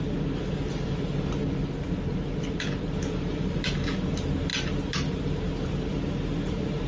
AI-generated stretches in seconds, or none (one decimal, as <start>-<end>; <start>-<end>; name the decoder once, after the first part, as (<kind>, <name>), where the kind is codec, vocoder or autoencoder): none